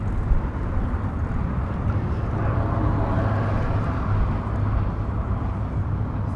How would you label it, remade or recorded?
recorded